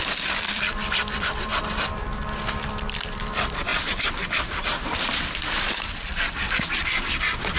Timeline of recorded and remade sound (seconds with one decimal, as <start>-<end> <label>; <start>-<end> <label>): 0.0-1.5 remade; 1.5-2.7 recorded; 2.7-7.6 remade